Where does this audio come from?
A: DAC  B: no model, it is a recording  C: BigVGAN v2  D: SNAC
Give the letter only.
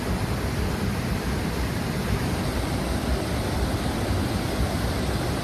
B